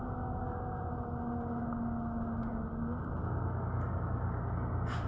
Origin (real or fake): real